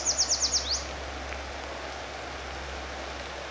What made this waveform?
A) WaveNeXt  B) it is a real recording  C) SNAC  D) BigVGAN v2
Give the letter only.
B